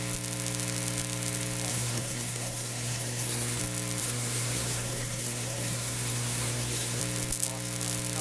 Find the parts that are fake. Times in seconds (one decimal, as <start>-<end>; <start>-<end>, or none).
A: 1.7-3.6; 4.0-7.0